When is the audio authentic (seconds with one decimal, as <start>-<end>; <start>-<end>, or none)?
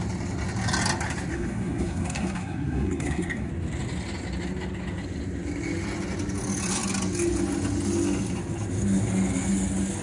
0.0-1.3; 3.5-10.0